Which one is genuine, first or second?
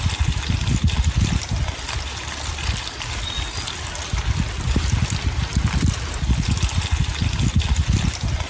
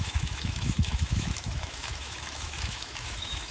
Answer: first